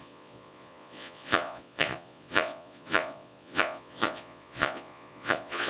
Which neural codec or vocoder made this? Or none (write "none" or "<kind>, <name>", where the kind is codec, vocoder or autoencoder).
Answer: vocoder, Vocos